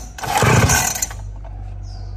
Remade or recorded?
recorded